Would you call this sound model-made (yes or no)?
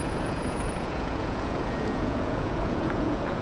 yes